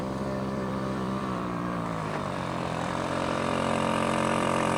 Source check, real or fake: fake